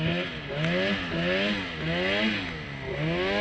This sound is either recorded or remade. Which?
recorded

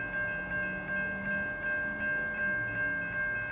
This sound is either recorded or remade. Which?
recorded